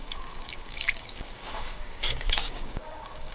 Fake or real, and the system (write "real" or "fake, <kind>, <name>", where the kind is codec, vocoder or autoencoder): fake, codec, DAC